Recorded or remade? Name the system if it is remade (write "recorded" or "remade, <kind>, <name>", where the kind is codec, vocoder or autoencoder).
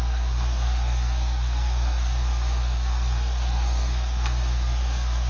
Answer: remade, codec, SNAC